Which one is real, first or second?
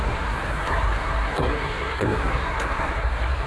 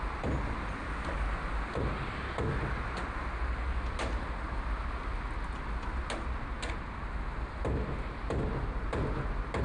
second